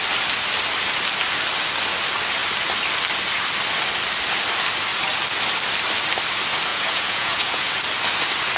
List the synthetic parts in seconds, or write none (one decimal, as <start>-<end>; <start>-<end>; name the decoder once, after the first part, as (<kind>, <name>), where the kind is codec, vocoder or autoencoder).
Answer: 6.7-7.7 (vocoder, Vocos)